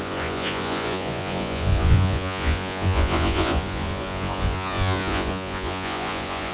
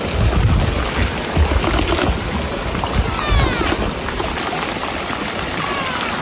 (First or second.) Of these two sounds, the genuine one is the second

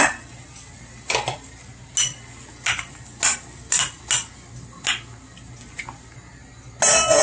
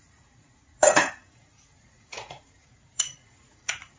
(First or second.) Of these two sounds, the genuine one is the first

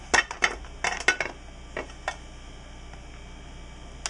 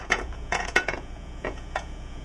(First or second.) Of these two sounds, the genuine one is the first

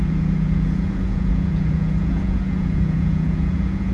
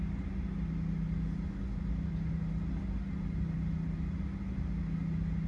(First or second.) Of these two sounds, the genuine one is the second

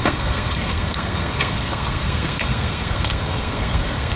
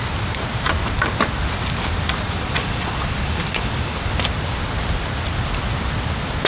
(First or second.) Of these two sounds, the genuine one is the second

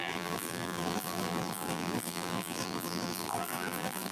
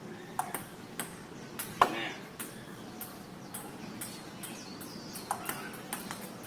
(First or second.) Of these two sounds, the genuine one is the second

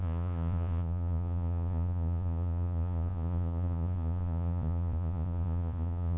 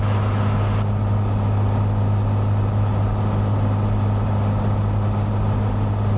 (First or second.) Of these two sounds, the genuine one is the second